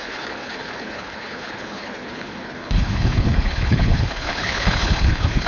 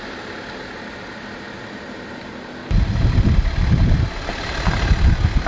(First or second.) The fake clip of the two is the first